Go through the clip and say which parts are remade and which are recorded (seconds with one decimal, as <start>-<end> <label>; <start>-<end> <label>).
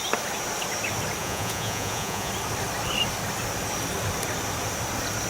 0.0-1.2 recorded; 1.2-2.3 remade; 2.3-5.3 recorded